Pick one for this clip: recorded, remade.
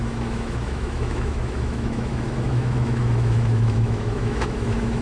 remade